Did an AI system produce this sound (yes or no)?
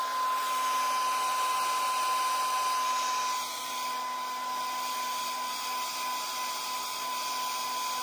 no